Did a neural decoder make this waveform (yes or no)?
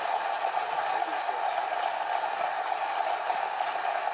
no